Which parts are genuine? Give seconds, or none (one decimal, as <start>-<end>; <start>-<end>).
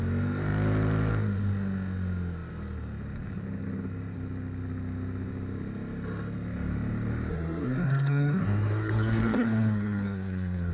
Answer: 0.0-7.3